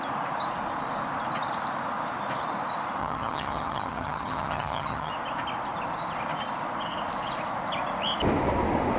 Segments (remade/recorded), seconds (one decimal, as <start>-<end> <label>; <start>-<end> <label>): 0.0-3.0 recorded; 3.0-5.1 remade; 5.1-9.0 recorded